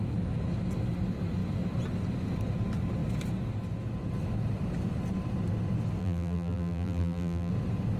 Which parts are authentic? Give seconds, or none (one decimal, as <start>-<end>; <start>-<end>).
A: 0.0-6.0; 7.5-8.0